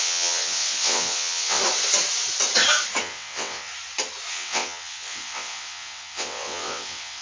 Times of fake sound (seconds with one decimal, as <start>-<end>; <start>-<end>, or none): 0.0-1.6; 3.0-3.7; 4.3-7.2